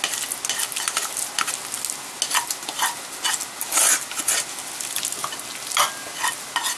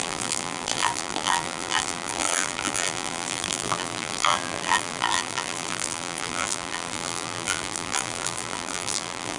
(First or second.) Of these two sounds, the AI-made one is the second